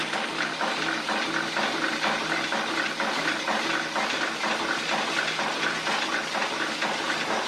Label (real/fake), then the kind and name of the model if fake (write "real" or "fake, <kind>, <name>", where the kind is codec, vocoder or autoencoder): real